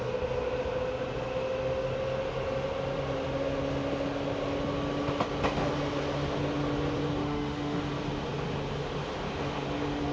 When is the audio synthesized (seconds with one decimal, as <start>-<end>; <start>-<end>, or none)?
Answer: 7.2-7.8